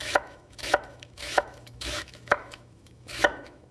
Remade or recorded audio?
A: remade